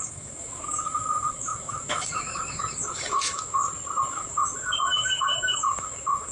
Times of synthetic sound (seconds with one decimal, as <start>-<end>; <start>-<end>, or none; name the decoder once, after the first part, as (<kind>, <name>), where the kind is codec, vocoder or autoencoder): 0.0-3.6 (autoencoder, DAC-VAE); 4.1-6.3